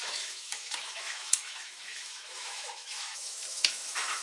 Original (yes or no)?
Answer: no